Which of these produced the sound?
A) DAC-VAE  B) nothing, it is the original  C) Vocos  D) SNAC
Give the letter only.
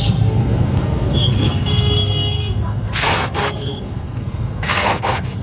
D